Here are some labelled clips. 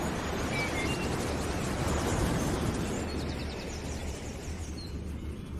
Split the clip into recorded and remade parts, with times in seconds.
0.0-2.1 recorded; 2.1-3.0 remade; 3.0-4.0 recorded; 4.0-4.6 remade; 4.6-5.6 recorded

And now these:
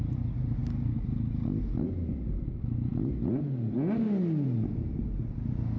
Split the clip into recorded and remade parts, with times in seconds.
0.0-5.8 recorded